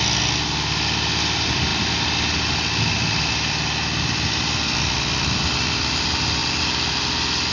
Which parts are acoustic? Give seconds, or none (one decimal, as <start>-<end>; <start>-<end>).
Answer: 0.0-7.5